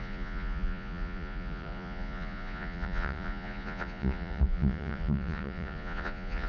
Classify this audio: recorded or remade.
remade